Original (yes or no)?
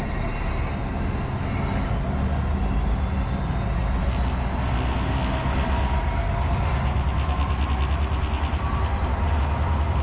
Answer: yes